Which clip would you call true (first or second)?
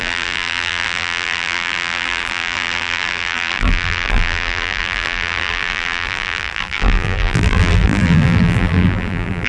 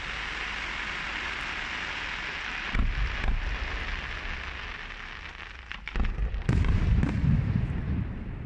second